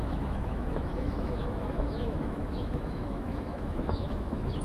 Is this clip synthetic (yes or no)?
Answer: yes